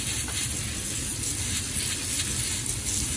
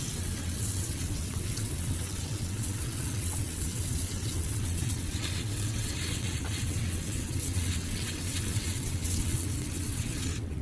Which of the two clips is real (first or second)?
first